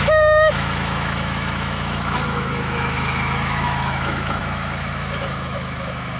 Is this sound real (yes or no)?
no